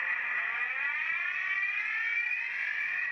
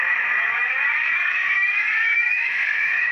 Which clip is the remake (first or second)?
second